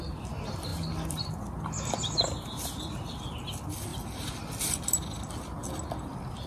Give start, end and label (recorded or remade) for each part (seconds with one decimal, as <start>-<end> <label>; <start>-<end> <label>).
0.0-0.7 recorded; 0.7-1.3 remade; 1.3-6.5 recorded